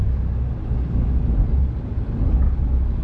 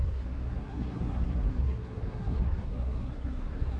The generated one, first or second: second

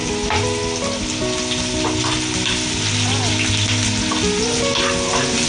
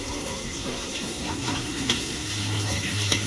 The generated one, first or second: second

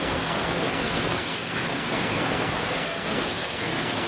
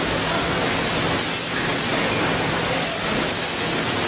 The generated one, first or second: first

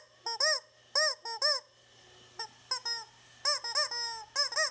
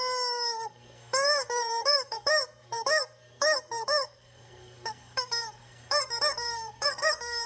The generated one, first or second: second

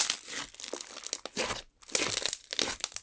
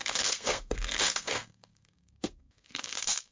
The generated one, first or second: second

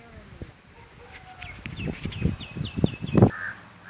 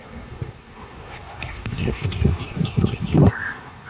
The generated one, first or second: second